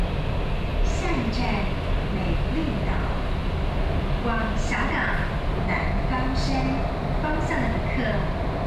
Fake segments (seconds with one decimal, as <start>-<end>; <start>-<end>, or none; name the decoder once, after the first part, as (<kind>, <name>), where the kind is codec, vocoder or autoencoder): none